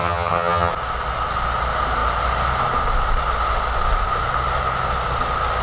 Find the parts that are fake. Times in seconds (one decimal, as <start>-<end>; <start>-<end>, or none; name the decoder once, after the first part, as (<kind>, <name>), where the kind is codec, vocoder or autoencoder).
0.0-0.7 (vocoder, HiFi-GAN)